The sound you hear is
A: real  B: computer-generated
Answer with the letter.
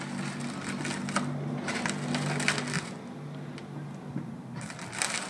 A